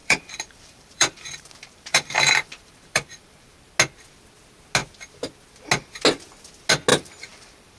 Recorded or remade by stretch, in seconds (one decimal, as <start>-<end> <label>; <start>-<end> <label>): 0.0-3.7 remade; 3.7-6.9 recorded; 6.9-7.8 remade